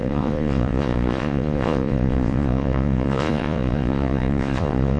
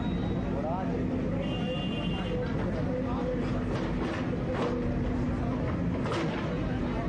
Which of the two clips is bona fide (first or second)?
second